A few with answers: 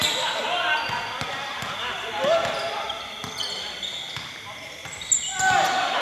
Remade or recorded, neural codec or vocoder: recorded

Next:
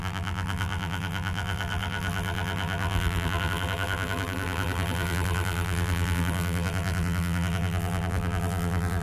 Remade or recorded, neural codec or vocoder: remade, vocoder, BigVGAN v2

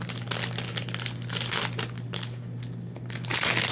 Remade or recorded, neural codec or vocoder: recorded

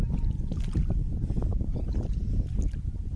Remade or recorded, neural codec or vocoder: recorded